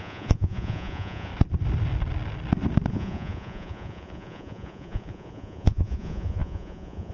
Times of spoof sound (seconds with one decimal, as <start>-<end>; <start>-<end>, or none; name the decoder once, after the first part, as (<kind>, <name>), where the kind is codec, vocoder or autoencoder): 0.0-1.3 (vocoder, Vocos); 2.9-7.1